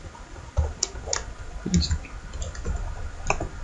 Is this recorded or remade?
recorded